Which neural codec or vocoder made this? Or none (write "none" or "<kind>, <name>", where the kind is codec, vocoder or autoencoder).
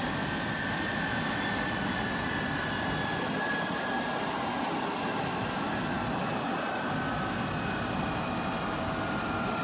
none